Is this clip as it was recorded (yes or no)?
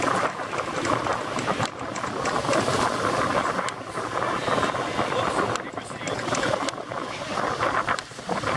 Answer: yes